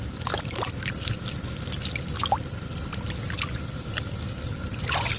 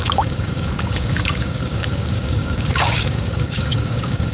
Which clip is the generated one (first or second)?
second